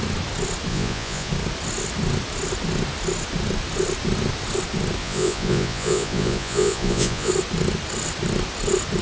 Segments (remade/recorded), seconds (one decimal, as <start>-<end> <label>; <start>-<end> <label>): 0.0-0.7 recorded; 0.7-1.3 remade; 1.3-5.0 recorded; 5.0-7.3 remade; 7.3-9.0 recorded